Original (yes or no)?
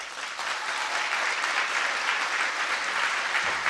yes